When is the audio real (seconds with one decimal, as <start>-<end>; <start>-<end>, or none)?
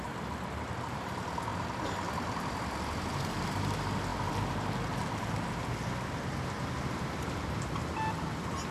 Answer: 0.0-8.7